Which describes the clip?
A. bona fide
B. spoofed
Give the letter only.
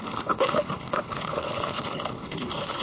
B